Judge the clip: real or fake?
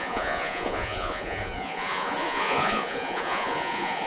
fake